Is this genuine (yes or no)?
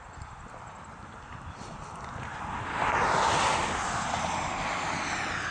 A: yes